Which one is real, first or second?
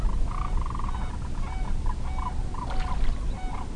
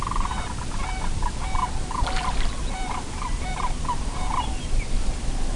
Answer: first